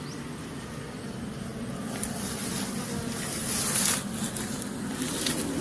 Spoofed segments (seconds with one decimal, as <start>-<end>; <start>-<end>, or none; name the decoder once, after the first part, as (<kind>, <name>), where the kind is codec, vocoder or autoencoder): none